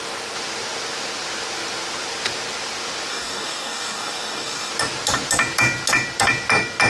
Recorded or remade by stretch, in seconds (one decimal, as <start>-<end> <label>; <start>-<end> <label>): 0.0-3.1 recorded; 3.1-4.7 remade; 4.7-6.9 recorded